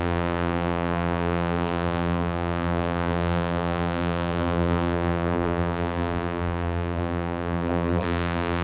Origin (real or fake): fake